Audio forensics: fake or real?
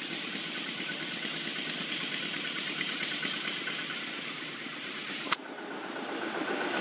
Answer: fake